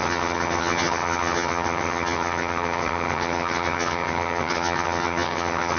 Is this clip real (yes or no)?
no